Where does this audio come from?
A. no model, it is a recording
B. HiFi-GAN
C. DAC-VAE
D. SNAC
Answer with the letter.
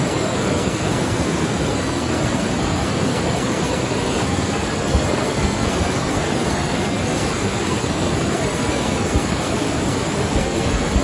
D